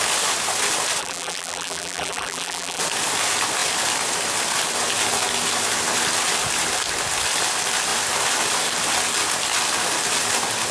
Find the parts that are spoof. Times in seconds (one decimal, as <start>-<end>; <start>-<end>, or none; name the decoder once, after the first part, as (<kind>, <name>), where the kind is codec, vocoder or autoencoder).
1.0-2.8 (vocoder, BigVGAN v2)